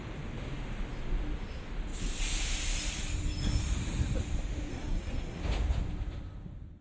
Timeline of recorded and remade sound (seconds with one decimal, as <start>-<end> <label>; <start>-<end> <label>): 0.0-4.7 recorded; 4.7-5.4 remade; 5.4-6.8 recorded